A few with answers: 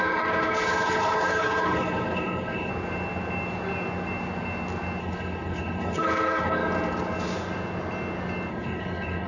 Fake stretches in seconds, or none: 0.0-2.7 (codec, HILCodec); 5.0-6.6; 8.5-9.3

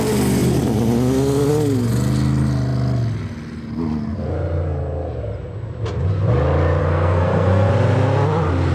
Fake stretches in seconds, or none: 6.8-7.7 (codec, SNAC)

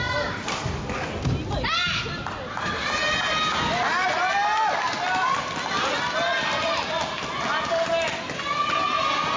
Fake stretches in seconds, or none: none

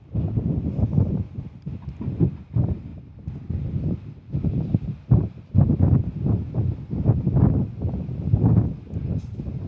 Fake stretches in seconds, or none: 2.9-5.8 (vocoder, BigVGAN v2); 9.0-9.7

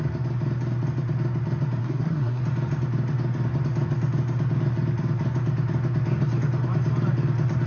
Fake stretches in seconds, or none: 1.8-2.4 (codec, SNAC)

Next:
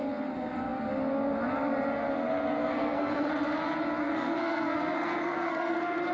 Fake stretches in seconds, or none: 2.6-3.3 (codec, SNAC); 4.0-6.1

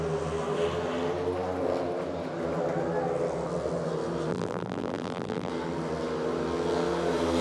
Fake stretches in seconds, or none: 4.3-5.5 (vocoder, BigVGAN v2)

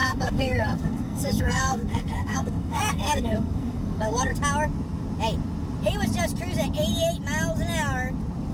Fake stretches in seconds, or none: 0.0-4.3 (codec, SNAC)